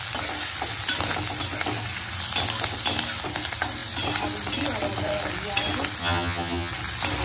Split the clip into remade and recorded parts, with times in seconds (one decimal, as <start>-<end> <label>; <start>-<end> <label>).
0.0-6.0 recorded; 6.0-6.7 remade; 6.7-7.2 recorded